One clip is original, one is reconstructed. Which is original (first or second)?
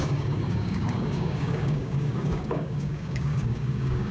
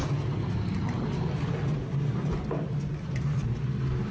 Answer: second